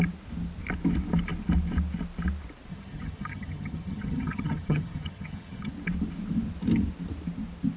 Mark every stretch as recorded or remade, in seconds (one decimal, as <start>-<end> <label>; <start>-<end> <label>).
0.0-2.7 recorded; 2.7-5.7 remade; 5.7-7.8 recorded